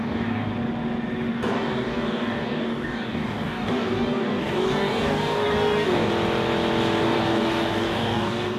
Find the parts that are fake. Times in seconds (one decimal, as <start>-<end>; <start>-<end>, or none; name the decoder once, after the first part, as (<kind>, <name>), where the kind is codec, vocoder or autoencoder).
0.0-0.5 (codec, DAC); 1.3-6.1; 7.0-8.6